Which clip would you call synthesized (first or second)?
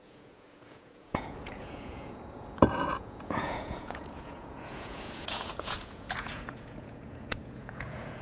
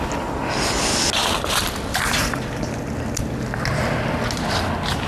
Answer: first